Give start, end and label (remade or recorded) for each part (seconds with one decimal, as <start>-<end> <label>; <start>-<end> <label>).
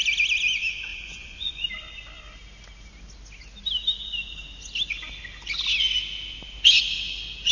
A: 0.0-0.9 recorded; 0.9-1.7 remade; 1.7-7.5 recorded